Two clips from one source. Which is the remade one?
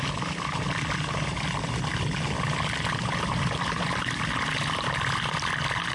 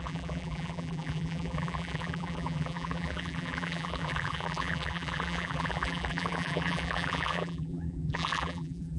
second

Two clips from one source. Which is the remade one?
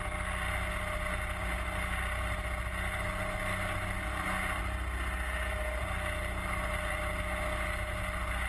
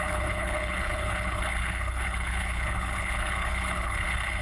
second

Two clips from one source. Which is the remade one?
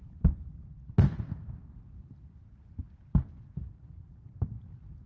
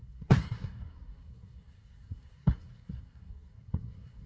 second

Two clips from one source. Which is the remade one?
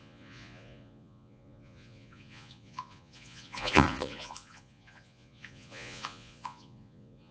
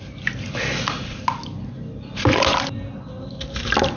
first